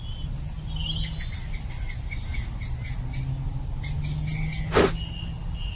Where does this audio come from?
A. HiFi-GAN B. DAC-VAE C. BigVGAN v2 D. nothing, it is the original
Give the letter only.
D